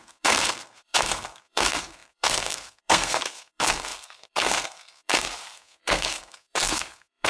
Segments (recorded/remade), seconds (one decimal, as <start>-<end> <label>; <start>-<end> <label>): 0.0-7.3 remade